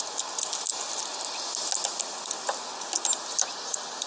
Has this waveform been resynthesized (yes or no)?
no